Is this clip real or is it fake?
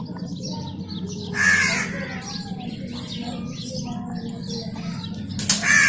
real